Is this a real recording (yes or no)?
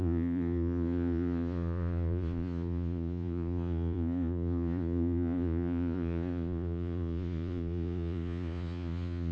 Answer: no